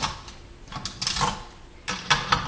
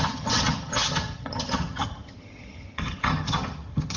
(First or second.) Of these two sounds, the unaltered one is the first